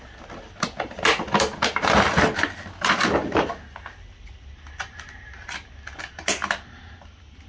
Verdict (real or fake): real